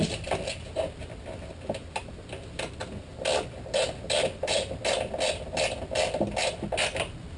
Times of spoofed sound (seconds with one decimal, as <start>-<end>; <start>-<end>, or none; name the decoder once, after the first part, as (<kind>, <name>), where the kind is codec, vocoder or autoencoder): none